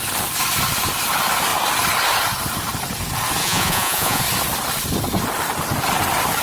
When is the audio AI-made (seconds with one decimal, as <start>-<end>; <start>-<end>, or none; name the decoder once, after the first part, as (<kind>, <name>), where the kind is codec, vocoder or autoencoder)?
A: 3.4-4.2 (vocoder, Vocos)

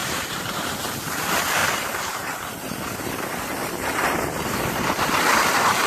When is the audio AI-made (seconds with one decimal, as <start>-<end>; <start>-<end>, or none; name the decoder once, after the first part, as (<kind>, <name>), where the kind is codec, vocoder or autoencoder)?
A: 0.0-0.7 (vocoder, BigVGAN v2); 1.6-2.8; 3.6-4.6